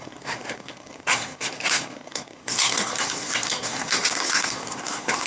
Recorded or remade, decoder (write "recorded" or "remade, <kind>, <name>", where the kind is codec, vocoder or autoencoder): remade, codec, SNAC